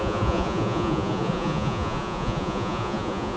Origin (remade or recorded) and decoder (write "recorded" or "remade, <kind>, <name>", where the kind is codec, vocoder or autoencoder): remade, vocoder, Vocos